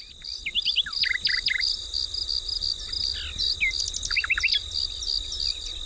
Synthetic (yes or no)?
no